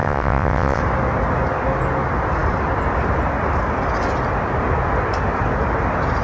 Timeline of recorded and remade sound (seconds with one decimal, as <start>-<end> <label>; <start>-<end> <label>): 0.0-0.8 remade; 0.8-6.2 recorded

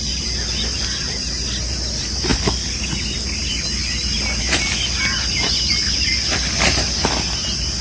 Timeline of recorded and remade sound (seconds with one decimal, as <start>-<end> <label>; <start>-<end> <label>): 0.0-7.8 recorded